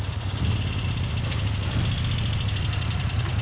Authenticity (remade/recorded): recorded